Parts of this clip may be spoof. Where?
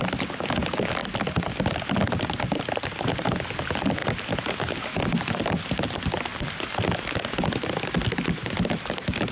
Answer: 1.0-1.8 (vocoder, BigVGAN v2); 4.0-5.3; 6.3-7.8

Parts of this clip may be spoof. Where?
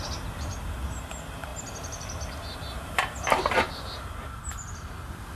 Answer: none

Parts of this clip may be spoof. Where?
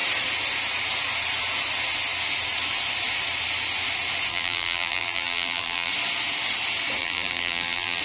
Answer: 4.3-5.9 (vocoder, BigVGAN v2); 7.0-8.0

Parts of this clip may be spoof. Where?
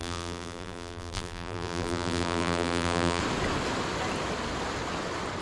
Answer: 0.0-3.2 (vocoder, BigVGAN v2)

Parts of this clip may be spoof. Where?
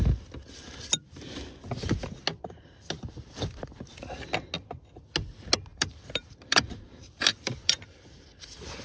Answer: 2.3-2.9 (vocoder, BigVGAN v2); 5.7-8.2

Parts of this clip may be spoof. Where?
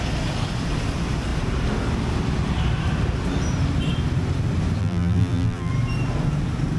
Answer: 4.8-5.7 (vocoder, BigVGAN v2)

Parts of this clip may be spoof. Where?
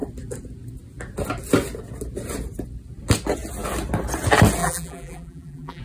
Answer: 4.6-5.8 (vocoder, BigVGAN v2)